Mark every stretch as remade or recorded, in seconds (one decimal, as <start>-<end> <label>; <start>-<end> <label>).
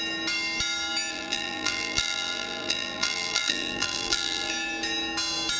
0.0-1.1 recorded; 1.1-4.5 remade; 4.5-5.6 recorded